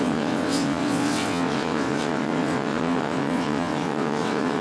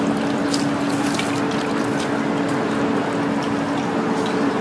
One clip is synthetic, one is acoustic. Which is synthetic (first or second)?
first